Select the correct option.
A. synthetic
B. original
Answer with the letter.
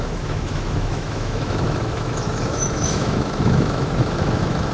A